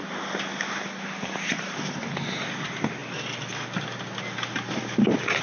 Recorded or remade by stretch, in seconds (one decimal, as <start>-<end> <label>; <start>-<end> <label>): 0.0-5.4 recorded